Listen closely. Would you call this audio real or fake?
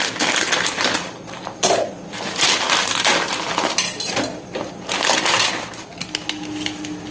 real